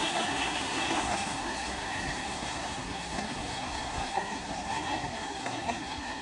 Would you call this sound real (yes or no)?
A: no